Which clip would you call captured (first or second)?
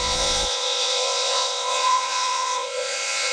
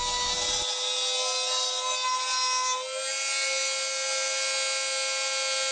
second